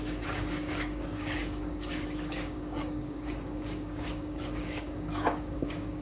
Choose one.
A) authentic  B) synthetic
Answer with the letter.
B